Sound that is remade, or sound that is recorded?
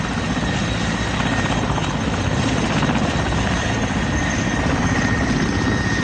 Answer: recorded